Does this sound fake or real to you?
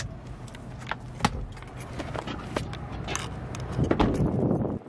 real